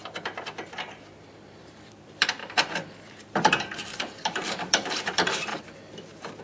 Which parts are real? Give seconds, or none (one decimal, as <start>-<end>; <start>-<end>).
2.4-3.3

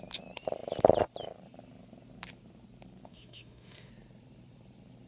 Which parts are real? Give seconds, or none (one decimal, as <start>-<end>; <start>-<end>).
0.0-3.1; 3.9-5.1

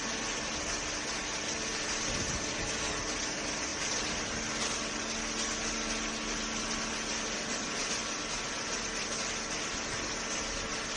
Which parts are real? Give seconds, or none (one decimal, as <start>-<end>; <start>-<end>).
0.0-11.0